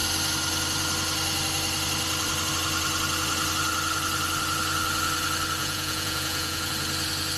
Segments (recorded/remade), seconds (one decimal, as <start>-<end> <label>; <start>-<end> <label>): 0.0-5.6 recorded; 5.6-6.7 remade; 6.7-7.4 recorded